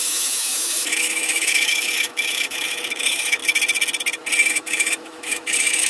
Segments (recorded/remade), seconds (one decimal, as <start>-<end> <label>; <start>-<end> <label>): 0.0-3.4 remade; 3.4-4.5 recorded; 4.5-5.9 remade